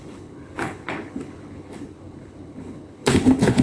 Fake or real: fake